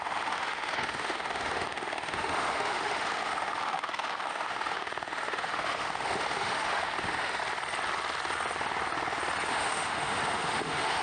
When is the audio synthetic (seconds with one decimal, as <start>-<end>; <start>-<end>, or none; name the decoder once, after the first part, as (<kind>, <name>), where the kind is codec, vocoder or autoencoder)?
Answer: 0.0-7.4 (autoencoder, DAC-VAE); 9.5-11.0